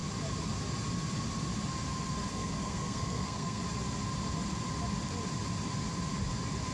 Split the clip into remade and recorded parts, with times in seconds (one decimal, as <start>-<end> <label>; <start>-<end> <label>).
0.0-2.3 recorded; 2.3-3.6 remade; 3.6-6.7 recorded